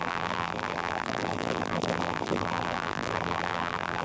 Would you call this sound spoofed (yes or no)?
yes